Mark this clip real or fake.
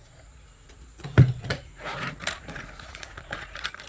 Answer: fake